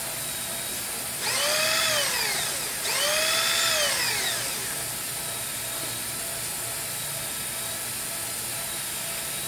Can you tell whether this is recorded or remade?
recorded